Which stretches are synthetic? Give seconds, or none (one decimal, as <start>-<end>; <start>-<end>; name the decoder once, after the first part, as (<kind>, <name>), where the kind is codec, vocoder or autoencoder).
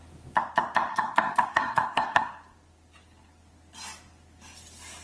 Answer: 0.9-2.3 (codec, SNAC)